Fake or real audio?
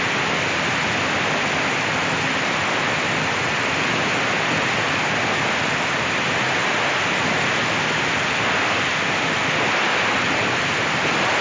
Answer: real